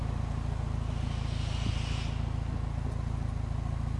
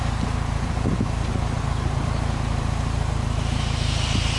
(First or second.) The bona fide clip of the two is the first